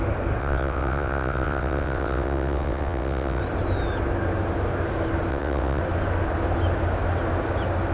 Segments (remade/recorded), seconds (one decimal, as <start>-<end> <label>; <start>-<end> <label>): 0.0-0.4 recorded; 0.4-3.4 remade; 3.4-5.3 recorded; 5.3-5.8 remade; 5.8-7.9 recorded